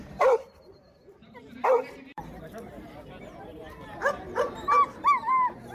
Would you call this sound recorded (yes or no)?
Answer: no